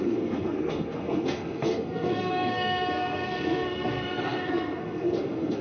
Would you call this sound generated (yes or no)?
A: yes